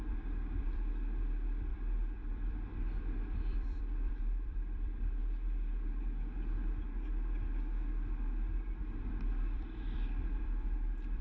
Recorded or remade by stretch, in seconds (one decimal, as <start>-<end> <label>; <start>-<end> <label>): 0.0-5.2 remade; 5.2-8.8 recorded; 8.8-11.2 remade